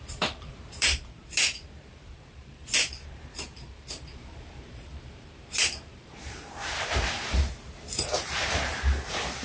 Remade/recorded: remade